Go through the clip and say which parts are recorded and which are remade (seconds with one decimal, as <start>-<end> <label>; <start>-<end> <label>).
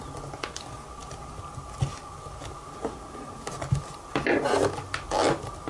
0.0-5.7 recorded